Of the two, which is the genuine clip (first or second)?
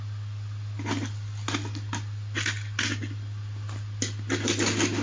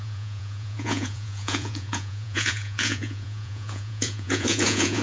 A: first